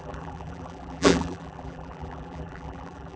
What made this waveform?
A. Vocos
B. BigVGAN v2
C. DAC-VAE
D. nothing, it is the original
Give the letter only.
B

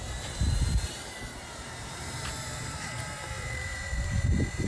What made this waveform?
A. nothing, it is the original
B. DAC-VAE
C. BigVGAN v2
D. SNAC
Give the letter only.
C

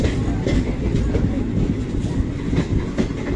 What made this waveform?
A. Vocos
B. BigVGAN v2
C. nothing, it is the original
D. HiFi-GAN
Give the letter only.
C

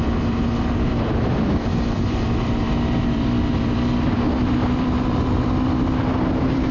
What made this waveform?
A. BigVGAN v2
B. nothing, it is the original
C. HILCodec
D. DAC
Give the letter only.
A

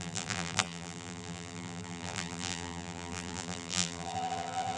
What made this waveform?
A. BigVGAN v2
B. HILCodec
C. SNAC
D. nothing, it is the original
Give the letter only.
A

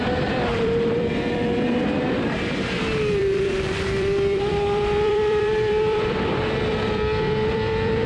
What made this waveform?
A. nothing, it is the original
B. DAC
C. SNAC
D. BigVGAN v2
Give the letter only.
D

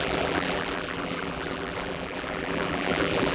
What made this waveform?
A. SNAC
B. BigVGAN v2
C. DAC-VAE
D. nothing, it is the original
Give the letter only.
B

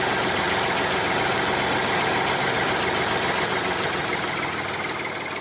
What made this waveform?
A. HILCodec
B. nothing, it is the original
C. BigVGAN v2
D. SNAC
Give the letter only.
B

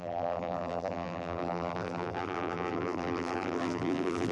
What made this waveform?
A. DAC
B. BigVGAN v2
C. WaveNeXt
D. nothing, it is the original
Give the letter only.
B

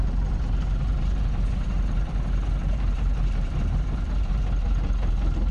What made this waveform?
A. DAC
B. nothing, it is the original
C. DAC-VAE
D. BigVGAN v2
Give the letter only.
D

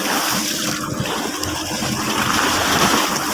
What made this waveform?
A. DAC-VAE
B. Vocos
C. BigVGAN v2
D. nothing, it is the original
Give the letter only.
D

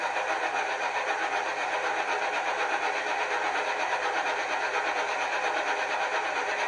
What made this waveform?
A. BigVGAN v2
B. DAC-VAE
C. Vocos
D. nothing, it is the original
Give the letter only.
D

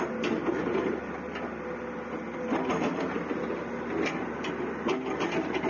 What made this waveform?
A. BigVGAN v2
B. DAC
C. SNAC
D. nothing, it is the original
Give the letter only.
D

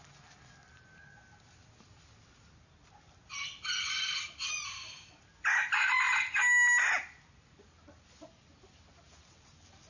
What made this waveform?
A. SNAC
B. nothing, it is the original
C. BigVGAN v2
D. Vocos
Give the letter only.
B